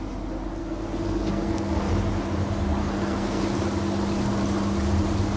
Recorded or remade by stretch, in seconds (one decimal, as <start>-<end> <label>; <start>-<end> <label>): 0.0-0.6 recorded; 0.6-1.9 remade; 1.9-2.8 recorded; 2.8-3.4 remade; 3.4-5.4 recorded